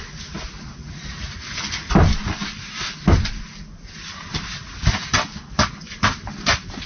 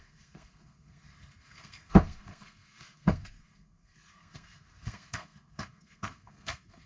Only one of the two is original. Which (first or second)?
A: first